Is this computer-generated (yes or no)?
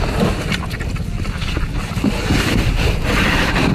no